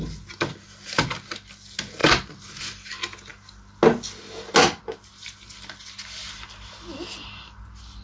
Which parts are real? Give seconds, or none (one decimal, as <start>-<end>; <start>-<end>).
0.0-8.0